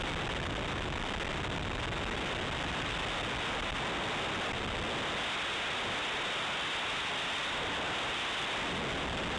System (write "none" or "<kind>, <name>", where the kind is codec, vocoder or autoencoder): none